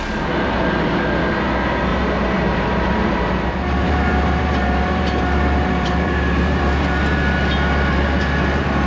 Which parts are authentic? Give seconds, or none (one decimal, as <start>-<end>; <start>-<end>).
0.0-1.9; 6.6-8.9